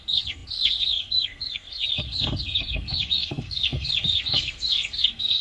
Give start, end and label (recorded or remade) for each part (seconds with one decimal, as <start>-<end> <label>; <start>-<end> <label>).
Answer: 0.0-5.4 remade